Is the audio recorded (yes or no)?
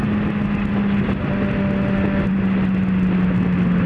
yes